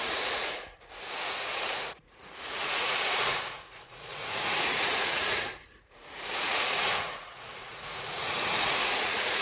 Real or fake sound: fake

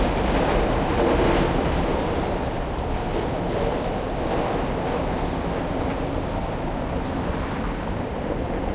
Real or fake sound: real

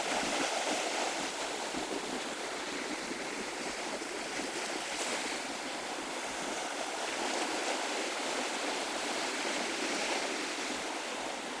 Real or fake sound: real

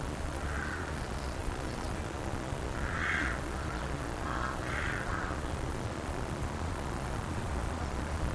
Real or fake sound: fake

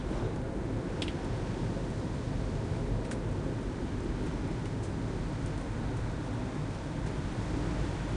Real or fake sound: real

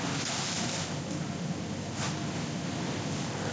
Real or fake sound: real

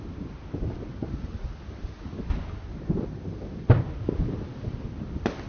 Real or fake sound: real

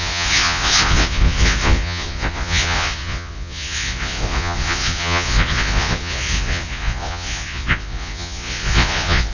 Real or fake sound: fake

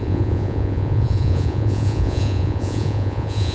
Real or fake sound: fake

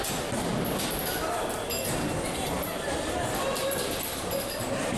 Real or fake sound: real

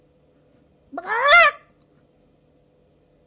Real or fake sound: real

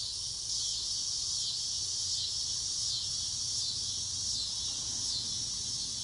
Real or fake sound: real